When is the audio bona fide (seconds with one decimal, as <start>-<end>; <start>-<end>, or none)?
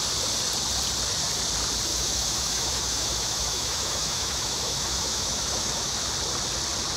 0.0-1.9; 6.1-7.0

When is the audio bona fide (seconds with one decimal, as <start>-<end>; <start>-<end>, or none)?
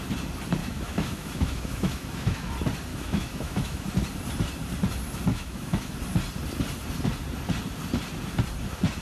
0.0-0.6; 2.5-2.9; 3.9-5.3; 5.9-9.0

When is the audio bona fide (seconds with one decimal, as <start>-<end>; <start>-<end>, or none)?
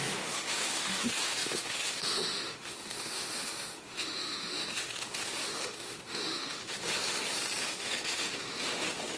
7.0-7.6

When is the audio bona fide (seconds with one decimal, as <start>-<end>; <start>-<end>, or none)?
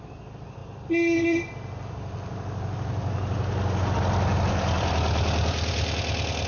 0.0-6.5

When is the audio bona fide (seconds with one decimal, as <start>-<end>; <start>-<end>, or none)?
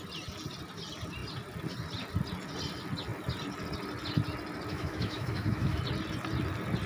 0.0-4.7; 5.8-6.9